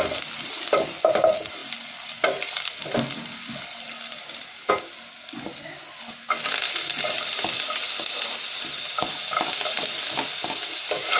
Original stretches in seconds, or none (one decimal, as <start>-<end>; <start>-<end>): 0.0-11.2